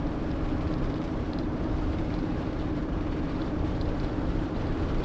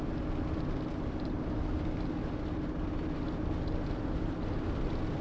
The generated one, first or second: first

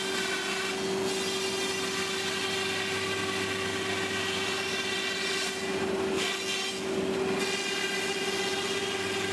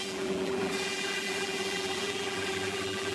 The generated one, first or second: second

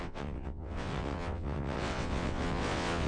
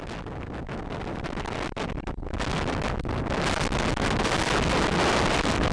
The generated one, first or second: first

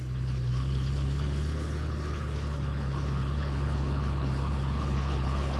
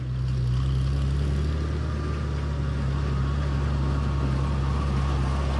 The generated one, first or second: first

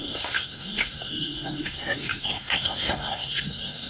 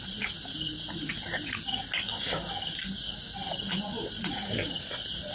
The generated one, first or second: first